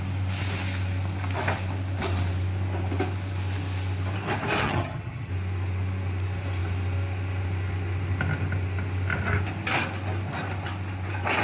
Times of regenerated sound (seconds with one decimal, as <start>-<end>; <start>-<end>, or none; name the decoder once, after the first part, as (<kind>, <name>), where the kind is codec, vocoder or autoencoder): 4.6-5.3 (vocoder, HiFi-GAN)